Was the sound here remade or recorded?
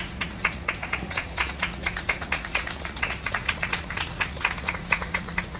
remade